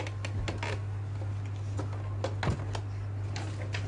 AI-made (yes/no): no